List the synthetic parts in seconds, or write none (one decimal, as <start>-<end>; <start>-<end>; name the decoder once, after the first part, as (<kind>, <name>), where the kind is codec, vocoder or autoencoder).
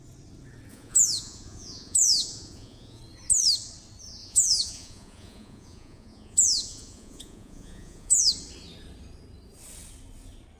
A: 0.7-3.0 (vocoder, Vocos); 4.2-8.3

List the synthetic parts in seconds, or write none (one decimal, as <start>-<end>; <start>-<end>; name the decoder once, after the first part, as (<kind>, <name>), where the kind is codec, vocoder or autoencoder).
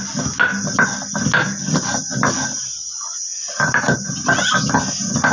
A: none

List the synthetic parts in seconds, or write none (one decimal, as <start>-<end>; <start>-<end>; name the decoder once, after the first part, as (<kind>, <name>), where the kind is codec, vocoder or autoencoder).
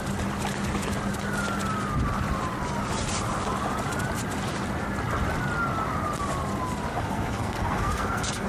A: 6.9-8.5 (codec, SNAC)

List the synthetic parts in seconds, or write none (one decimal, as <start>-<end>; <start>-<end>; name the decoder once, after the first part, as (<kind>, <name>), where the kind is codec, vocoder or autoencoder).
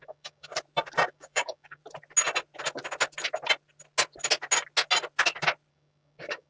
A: 0.0-0.5 (codec, DAC); 1.1-1.8; 5.7-6.5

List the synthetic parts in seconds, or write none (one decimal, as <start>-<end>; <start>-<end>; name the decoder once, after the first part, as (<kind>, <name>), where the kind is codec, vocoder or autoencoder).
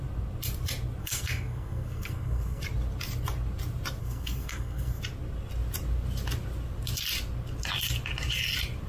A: 1.0-2.6 (codec, SNAC); 4.0-5.0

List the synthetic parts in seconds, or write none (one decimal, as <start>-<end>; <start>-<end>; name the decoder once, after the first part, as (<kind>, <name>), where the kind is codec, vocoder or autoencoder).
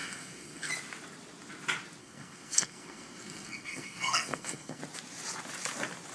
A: 0.0-0.7 (codec, SNAC); 2.0-4.8